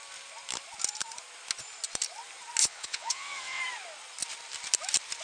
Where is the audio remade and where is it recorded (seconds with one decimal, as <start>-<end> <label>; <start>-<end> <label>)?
0.0-2.6 recorded; 2.6-3.6 remade; 3.6-5.2 recorded